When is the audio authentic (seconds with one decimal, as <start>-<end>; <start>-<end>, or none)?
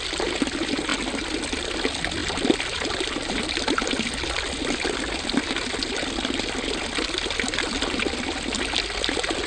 0.0-9.5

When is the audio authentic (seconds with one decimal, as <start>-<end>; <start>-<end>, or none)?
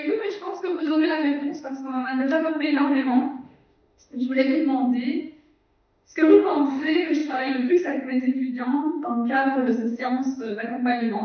4.6-5.2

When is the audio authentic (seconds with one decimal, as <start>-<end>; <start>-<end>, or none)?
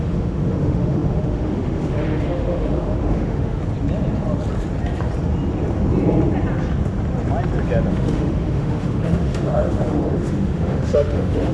3.6-7.9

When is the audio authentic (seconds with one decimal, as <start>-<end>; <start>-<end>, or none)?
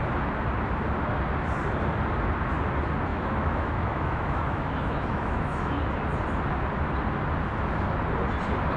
0.0-3.1; 5.8-8.8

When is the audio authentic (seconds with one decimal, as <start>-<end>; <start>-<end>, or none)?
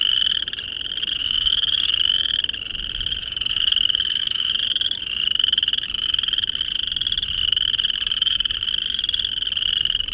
0.0-1.2; 1.9-3.2; 4.6-10.1